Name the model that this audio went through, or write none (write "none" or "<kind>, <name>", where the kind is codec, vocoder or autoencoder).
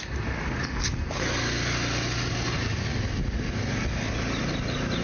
none